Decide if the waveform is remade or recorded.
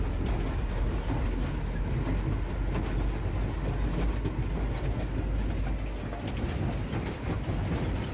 recorded